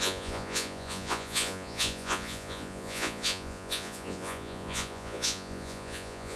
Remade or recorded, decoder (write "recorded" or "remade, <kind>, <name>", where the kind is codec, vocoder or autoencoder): remade, vocoder, Vocos